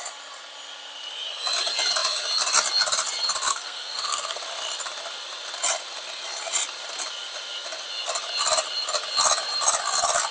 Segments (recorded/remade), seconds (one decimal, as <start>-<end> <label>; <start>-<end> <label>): 0.0-3.5 recorded; 3.5-4.4 remade; 4.4-10.3 recorded